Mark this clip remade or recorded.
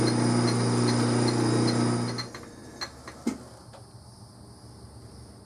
recorded